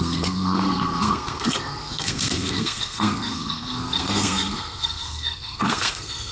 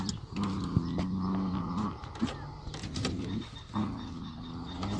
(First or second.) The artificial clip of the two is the first